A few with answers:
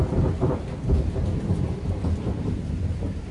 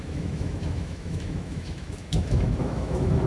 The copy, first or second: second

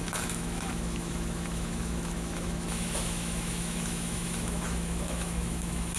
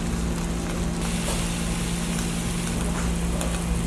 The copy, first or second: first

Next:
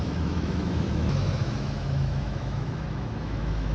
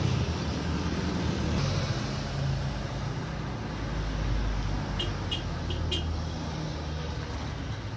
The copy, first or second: first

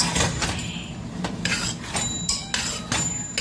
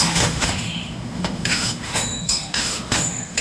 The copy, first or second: second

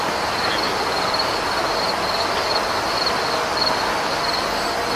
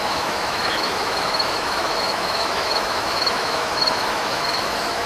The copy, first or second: second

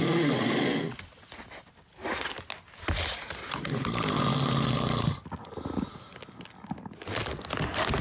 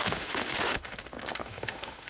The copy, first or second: second